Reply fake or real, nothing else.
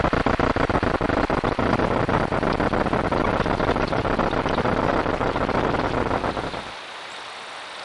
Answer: real